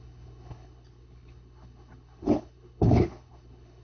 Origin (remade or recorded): remade